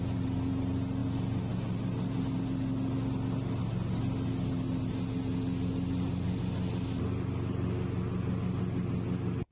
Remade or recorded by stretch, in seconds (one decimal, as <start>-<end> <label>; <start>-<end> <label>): 0.0-9.5 recorded